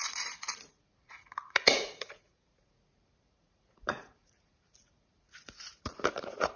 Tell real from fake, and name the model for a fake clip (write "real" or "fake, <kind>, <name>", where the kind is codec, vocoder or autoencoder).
fake, vocoder, Vocos